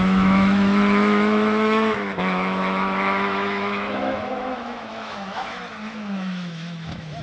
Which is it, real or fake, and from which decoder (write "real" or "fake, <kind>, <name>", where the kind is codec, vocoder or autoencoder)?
fake, autoencoder, DAC-VAE